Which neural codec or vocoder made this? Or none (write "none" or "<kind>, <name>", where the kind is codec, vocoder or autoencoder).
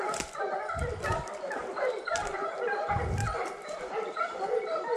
vocoder, BigVGAN v2